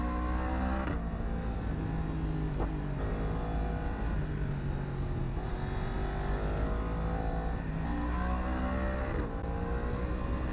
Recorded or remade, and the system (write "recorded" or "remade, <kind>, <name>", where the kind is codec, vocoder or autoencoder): recorded